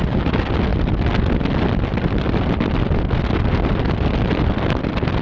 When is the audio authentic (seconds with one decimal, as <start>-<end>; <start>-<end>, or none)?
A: 0.0-5.2